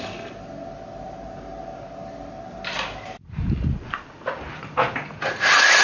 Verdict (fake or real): real